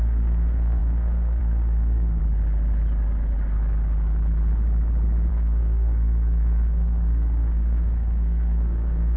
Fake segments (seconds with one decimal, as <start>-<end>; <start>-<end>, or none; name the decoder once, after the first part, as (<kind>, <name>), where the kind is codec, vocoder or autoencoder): 0.0-2.2 (codec, SNAC); 5.3-9.2